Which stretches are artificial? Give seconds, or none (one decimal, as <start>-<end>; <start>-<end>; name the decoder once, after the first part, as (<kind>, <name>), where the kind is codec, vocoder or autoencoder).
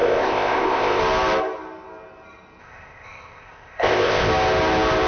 0.0-1.0 (codec, ZipCodec); 2.6-4.3